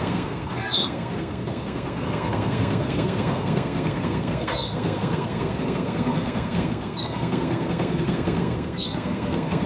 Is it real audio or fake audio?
fake